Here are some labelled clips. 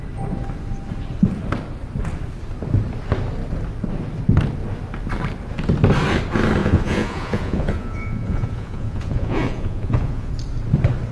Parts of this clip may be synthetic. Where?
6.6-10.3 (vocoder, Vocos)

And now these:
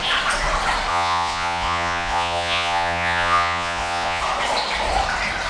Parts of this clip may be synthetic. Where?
0.9-4.2 (vocoder, Vocos)

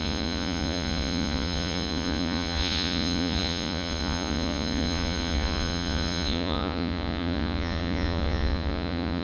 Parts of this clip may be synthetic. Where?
0.0-9.2 (vocoder, Vocos)

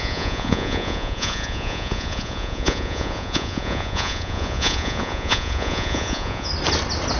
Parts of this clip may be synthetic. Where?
0.0-6.5 (vocoder, Vocos)

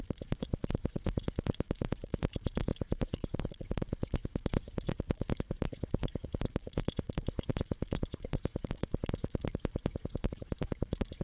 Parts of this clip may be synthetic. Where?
0.0-11.2 (vocoder, Vocos)